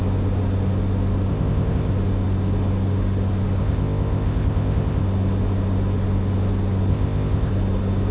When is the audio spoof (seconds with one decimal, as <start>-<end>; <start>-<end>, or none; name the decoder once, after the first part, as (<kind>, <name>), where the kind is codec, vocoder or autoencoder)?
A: 1.3-1.9 (codec, ZipCodec); 3.6-5.0; 6.9-7.5